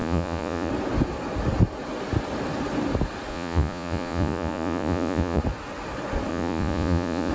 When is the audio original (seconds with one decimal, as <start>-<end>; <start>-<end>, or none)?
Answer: 0.7-3.3; 5.4-6.3